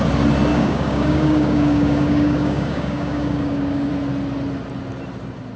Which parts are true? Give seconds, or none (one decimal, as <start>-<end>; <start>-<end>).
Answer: 0.0-0.5; 3.9-5.6